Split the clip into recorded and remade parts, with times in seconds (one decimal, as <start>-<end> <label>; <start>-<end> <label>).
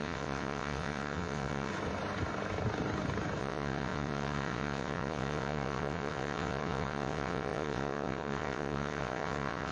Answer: 0.0-1.7 remade; 1.7-3.4 recorded; 3.4-9.7 remade